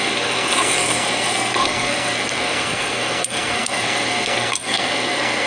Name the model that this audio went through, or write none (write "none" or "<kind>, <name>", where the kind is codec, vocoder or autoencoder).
codec, SNAC